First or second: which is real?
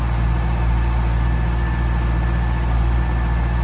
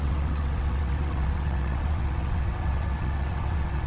first